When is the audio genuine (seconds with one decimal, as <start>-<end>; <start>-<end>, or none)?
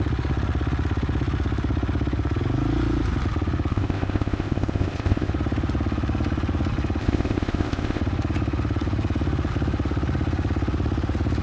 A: 0.0-3.7; 5.3-7.0; 8.0-11.4